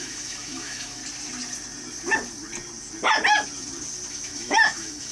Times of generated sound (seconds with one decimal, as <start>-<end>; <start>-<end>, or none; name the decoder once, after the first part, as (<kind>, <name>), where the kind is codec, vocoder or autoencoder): 0.0-1.0 (autoencoder, DAC-VAE); 4.1-5.1